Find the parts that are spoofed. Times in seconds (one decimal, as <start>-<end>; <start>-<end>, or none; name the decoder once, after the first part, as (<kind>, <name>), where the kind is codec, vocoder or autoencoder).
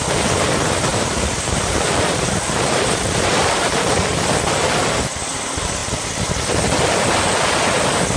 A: 0.9-4.0 (vocoder, BigVGAN v2)